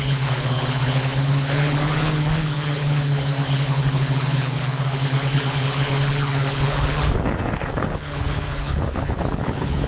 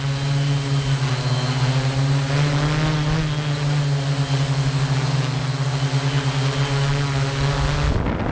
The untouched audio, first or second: second